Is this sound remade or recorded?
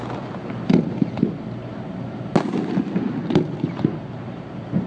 recorded